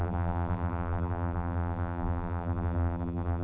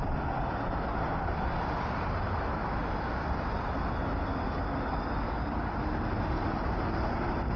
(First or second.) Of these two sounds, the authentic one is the second